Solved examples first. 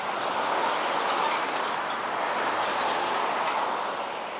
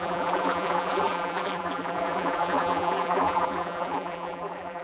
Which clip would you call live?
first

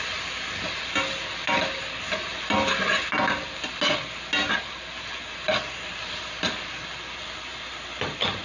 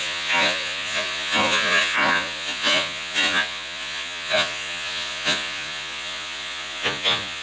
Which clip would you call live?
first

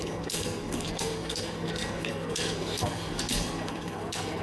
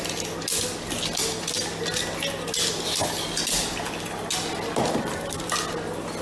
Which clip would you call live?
second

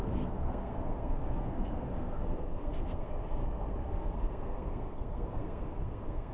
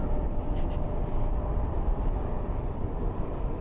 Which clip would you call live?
second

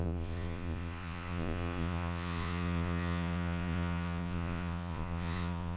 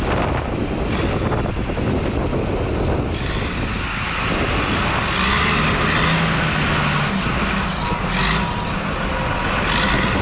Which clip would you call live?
second